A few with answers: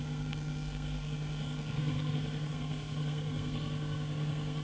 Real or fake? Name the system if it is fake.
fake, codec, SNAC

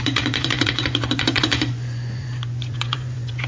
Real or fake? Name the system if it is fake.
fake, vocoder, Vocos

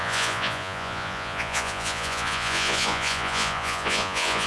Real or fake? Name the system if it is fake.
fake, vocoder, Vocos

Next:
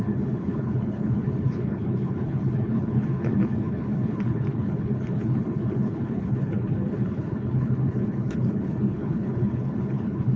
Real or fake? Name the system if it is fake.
fake, codec, HILCodec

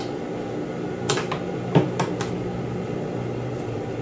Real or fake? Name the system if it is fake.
real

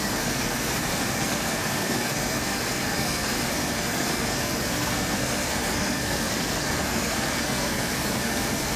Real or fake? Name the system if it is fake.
fake, codec, SNAC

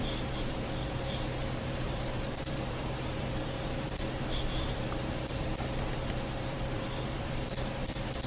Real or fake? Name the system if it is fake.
fake, vocoder, BigVGAN v2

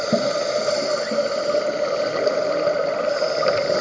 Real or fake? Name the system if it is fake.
real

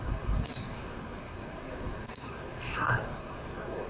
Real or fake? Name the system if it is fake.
fake, codec, SNAC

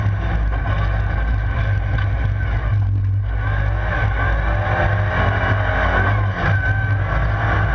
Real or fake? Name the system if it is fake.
real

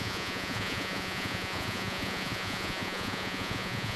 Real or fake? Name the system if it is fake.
fake, vocoder, Vocos